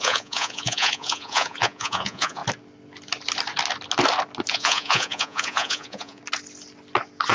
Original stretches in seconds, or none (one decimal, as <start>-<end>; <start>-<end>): 2.4-4.5; 6.2-7.3